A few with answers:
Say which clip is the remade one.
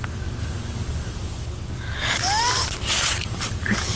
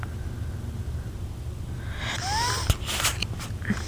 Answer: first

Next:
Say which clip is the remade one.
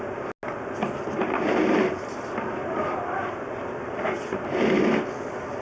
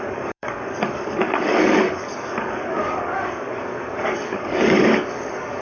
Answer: second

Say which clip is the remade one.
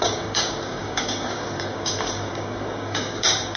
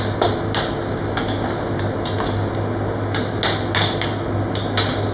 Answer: first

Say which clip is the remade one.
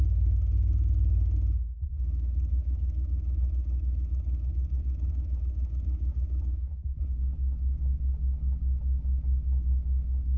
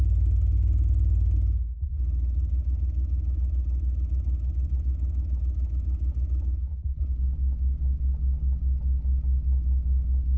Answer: first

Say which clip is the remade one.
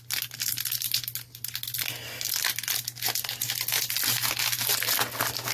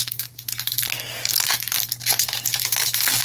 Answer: second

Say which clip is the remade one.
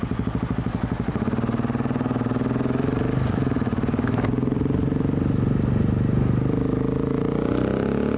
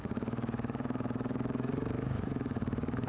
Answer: second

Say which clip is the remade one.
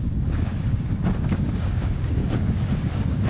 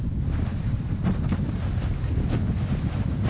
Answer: first